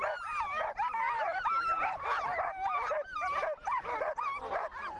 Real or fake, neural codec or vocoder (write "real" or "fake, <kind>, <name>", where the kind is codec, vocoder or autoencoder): real